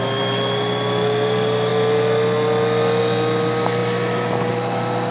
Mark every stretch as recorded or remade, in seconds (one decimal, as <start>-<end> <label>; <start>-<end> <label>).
0.0-5.1 recorded